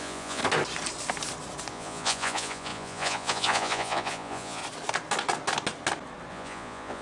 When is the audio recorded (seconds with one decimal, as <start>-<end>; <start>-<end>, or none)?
0.4-1.7; 4.6-6.3